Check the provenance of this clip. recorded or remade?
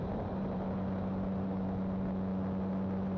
recorded